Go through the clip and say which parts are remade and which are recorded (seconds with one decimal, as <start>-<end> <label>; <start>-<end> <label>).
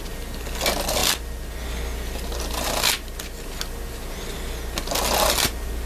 0.0-5.9 recorded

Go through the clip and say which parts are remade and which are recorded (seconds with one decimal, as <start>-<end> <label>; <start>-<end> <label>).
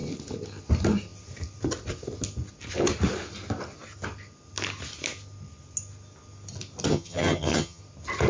0.0-6.9 recorded; 6.9-7.8 remade; 7.8-8.3 recorded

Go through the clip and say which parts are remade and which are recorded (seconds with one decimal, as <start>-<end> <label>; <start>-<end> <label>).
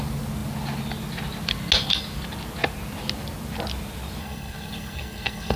0.0-4.2 recorded; 4.2-5.6 remade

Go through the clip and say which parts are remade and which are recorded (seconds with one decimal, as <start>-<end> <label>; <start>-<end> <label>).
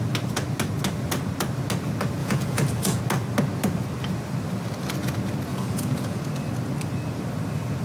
0.0-2.2 recorded; 2.2-3.0 remade; 3.0-5.5 recorded; 5.5-6.2 remade; 6.2-7.8 recorded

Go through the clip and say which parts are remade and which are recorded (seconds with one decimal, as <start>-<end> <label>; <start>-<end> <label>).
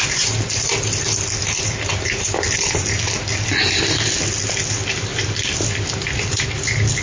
0.0-7.0 recorded